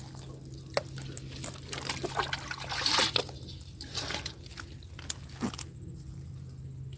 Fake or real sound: real